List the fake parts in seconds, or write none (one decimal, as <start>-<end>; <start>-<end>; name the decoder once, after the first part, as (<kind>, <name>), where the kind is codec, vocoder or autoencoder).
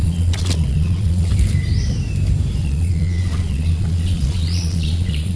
0.0-1.3 (vocoder, Vocos); 2.6-5.4